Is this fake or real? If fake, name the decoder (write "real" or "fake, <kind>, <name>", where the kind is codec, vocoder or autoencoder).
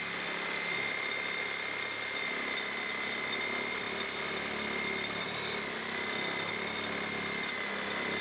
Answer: real